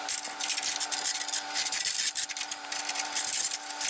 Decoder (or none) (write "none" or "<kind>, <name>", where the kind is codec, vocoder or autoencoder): none